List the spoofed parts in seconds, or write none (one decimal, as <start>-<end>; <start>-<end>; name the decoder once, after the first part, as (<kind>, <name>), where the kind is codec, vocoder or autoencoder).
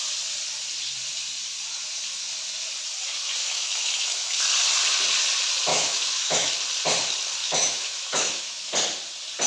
3.4-4.4 (autoencoder, DAC-VAE); 5.7-6.5; 7.4-8.7